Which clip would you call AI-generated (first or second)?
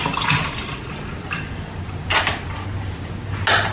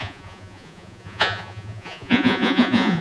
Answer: second